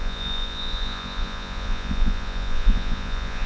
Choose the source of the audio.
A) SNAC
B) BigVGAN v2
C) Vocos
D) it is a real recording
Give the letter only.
C